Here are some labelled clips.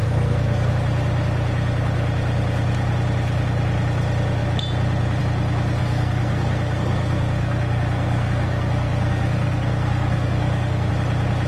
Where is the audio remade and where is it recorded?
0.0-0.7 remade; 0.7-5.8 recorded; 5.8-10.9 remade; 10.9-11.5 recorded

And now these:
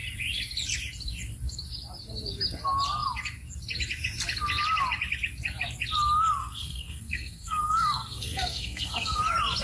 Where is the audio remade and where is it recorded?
0.0-6.4 recorded; 6.4-9.2 remade; 9.2-9.6 recorded

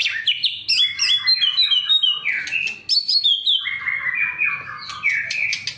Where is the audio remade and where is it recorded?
0.0-5.8 recorded

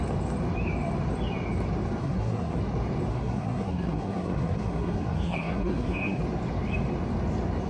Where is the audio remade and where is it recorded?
0.0-2.0 recorded; 2.0-2.6 remade; 2.6-3.1 recorded; 3.1-6.2 remade; 6.2-7.7 recorded